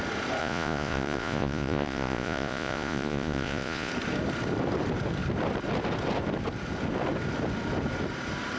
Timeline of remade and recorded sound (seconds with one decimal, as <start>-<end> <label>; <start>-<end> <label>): 0.0-0.4 recorded; 0.4-3.9 remade; 3.9-8.6 recorded